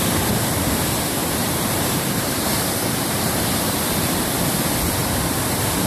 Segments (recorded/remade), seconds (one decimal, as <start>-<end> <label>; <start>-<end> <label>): 0.0-1.2 recorded; 1.2-4.3 remade; 4.3-5.0 recorded; 5.0-5.9 remade